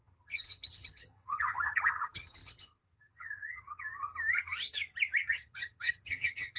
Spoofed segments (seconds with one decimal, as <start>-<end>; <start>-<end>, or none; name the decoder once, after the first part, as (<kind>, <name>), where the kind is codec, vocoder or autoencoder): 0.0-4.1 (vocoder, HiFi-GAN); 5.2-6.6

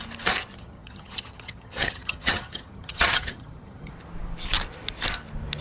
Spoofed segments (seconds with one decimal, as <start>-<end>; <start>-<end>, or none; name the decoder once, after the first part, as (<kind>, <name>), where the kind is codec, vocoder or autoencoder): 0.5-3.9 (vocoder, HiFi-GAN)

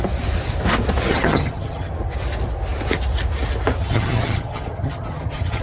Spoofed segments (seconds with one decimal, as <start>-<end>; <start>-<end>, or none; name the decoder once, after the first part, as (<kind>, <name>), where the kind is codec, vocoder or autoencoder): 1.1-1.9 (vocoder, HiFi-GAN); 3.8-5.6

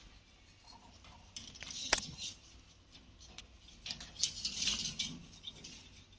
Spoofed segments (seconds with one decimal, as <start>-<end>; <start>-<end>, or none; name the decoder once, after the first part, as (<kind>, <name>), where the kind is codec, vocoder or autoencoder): 1.8-2.3 (vocoder, HiFi-GAN)